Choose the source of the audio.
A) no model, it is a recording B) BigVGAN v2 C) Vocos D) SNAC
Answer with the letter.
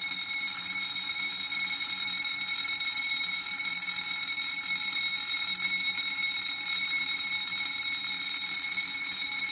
B